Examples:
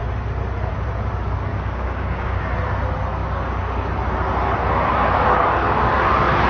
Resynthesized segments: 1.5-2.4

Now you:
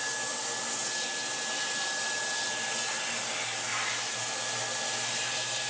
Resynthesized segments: none